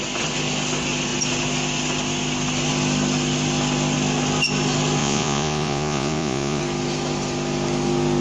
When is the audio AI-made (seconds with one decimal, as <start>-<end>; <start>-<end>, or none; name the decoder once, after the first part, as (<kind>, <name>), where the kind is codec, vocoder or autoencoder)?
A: 5.0-6.6 (vocoder, Vocos)